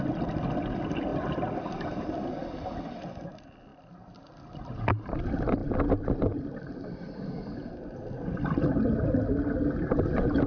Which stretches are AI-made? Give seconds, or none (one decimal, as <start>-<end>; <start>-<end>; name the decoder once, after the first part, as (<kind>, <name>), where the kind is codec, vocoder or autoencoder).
none